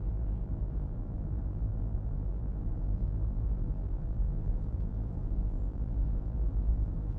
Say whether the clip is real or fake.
fake